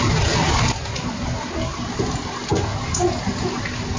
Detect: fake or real real